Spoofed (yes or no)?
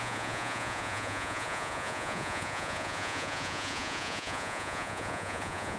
yes